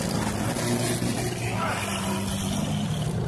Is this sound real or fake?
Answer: real